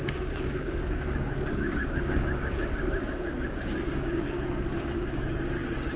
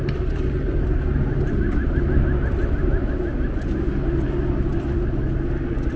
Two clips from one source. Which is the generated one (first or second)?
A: first